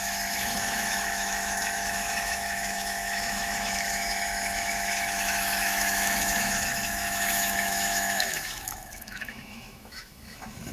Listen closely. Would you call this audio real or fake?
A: fake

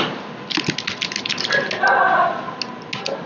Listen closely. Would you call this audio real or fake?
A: real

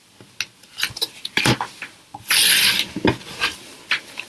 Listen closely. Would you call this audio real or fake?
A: real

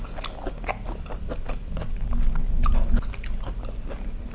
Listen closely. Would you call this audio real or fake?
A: real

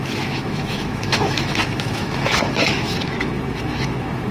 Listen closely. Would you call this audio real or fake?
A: fake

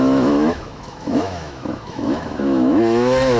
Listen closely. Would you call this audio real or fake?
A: fake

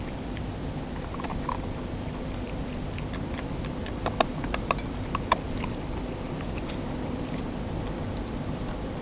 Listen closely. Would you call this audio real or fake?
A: fake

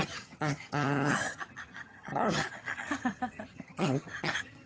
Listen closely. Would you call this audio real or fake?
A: fake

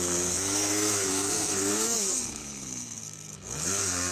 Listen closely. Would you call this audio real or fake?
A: fake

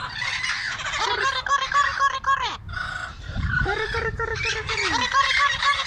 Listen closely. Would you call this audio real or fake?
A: fake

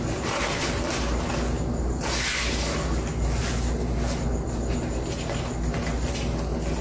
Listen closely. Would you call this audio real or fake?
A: real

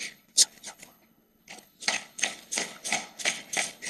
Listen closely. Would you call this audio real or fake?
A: fake